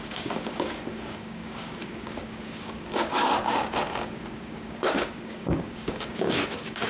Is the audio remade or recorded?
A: remade